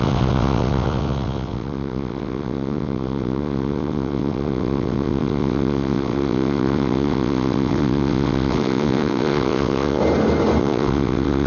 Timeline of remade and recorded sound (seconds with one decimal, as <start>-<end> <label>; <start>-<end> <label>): 0.0-10.0 remade; 10.0-10.6 recorded; 10.6-11.5 remade

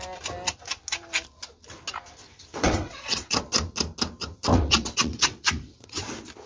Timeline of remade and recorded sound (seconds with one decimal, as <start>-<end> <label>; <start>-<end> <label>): 0.0-2.5 recorded; 2.5-3.4 remade; 3.4-4.5 recorded; 4.5-6.1 remade; 6.1-6.5 recorded